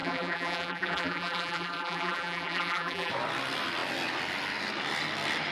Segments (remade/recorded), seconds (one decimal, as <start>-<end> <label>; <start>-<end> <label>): 0.0-3.1 remade; 3.1-5.5 recorded